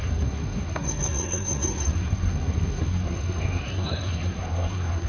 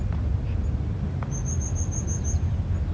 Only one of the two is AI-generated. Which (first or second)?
first